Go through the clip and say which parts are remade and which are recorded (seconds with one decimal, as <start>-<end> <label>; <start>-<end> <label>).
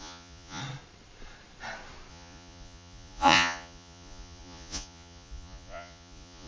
0.0-0.6 remade; 0.6-2.1 recorded; 2.1-6.5 remade